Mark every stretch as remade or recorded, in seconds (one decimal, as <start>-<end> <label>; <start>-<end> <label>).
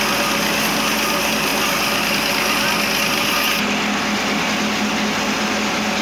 0.0-6.0 recorded